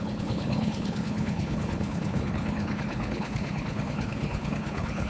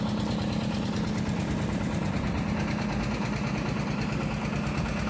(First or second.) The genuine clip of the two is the second